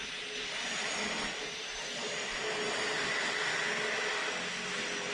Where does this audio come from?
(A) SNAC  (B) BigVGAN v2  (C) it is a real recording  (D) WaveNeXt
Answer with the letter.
C